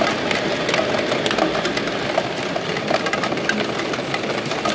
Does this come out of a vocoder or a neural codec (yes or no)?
no